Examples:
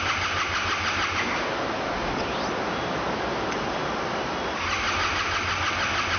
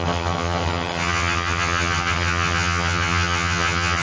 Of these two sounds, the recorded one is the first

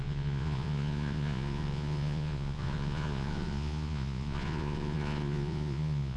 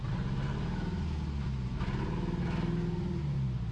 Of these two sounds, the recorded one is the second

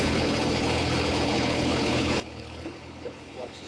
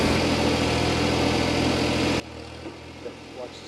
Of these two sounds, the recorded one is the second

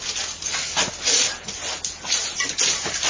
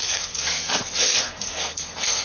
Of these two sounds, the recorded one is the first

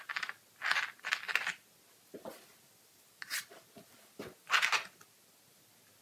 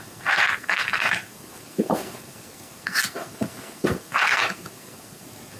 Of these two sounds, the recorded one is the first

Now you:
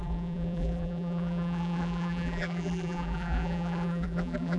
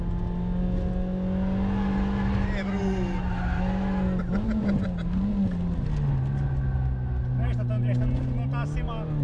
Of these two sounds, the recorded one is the second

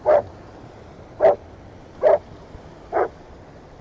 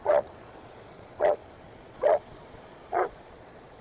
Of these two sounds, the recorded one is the first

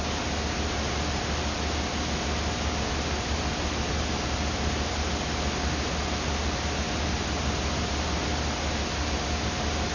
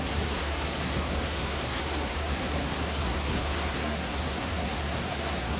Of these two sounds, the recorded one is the first